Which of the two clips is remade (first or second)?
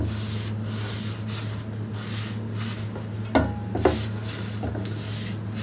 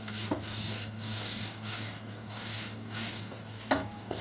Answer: second